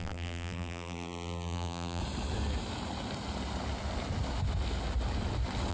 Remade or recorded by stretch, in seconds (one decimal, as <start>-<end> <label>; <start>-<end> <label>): 0.0-2.0 remade; 2.0-5.7 recorded